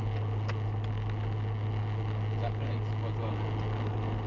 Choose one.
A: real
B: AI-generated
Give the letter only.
A